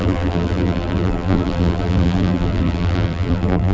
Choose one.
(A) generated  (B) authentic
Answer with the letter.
A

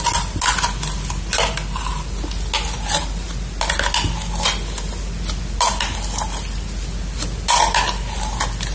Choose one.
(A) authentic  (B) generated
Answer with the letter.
A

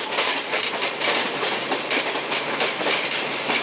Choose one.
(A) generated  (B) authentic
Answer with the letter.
A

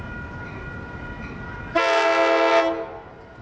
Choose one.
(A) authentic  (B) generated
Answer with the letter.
A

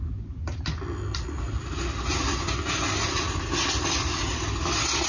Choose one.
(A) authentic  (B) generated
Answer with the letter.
A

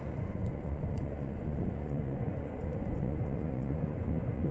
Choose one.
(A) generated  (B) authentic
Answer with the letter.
A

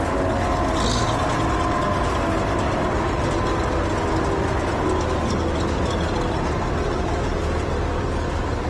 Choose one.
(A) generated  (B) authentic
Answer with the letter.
B